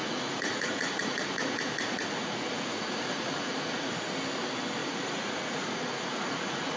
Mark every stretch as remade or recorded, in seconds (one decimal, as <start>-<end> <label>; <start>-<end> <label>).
0.0-3.9 remade; 3.9-4.8 recorded; 4.8-6.8 remade